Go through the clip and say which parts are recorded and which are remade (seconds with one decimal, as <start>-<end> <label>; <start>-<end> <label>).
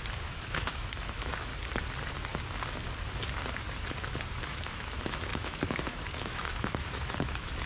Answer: 0.0-1.5 remade; 1.5-4.4 recorded; 4.4-7.7 remade